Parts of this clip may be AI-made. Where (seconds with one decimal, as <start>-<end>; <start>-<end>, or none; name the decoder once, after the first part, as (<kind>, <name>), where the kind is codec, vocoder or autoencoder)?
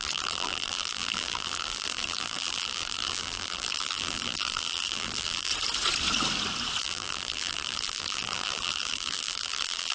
0.0-5.5 (vocoder, BigVGAN v2); 6.8-9.9